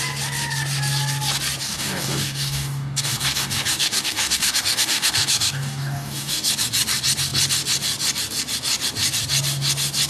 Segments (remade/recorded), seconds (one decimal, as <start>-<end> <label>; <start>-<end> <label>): 0.0-1.6 recorded; 1.6-6.5 remade; 6.5-10.1 recorded